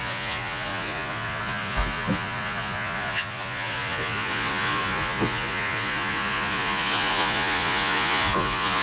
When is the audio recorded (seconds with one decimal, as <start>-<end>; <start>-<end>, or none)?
none